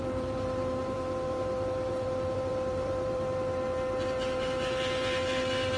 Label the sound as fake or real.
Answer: fake